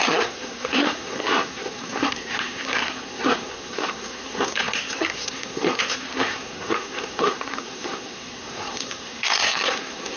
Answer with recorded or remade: remade